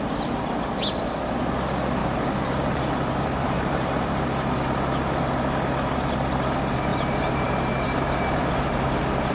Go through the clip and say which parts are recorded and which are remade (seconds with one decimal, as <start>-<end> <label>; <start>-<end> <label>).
0.0-2.0 recorded; 2.0-4.1 remade; 4.1-6.9 recorded; 6.9-8.5 remade; 8.5-9.3 recorded